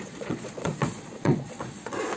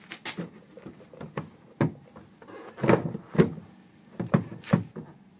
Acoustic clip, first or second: second